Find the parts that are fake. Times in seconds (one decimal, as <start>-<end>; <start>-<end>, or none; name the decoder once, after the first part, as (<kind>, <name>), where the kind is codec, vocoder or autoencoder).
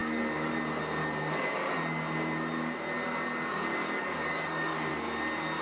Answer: 0.0-0.6 (codec, DAC); 1.0-1.7; 3.7-4.9